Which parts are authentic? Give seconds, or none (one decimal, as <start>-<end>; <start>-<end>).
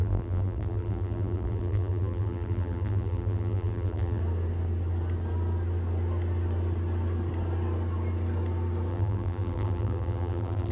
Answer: 4.2-8.9